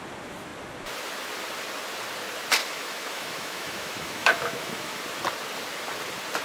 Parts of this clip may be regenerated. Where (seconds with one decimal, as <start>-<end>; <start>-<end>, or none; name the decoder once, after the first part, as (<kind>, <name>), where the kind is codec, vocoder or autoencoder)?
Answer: 2.6-5.0 (autoencoder, DAC-VAE)